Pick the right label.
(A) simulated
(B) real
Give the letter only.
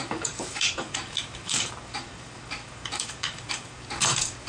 A